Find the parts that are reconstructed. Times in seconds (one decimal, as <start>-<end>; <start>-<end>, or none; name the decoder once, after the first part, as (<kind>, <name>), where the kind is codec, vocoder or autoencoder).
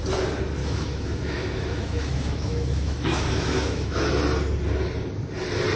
0.6-4.1 (autoencoder, DAC-VAE)